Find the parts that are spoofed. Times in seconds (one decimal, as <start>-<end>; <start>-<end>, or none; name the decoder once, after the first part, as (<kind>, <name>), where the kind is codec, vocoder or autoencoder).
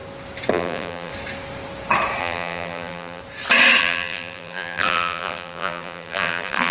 0.5-1.1 (vocoder, BigVGAN v2); 2.2-3.2; 3.8-6.7